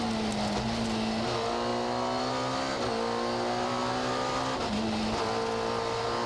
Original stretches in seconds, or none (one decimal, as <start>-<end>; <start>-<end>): 0.0-6.3